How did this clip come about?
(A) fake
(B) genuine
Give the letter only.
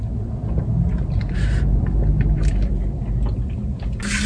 B